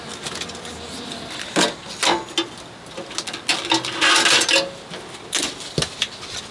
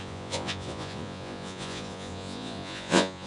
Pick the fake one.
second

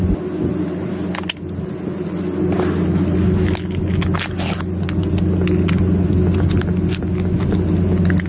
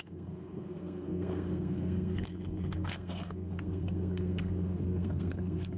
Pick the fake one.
second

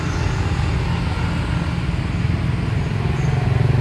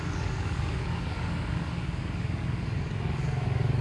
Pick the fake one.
second